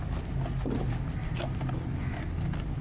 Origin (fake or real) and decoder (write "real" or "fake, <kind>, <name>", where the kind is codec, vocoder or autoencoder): real